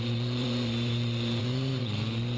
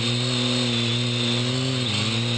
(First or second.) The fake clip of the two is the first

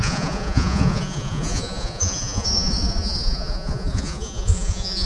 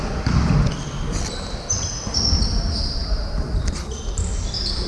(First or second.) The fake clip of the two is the first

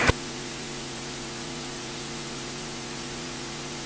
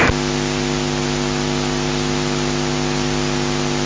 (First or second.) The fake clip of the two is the first